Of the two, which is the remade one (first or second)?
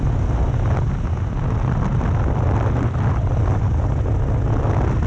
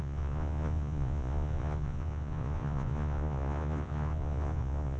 second